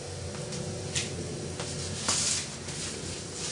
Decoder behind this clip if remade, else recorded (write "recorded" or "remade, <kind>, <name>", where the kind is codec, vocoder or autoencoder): recorded